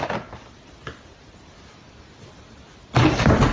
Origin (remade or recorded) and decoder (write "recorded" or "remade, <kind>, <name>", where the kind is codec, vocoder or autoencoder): recorded